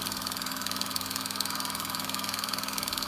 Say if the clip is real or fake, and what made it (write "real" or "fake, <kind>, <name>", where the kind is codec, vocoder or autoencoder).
fake, codec, SNAC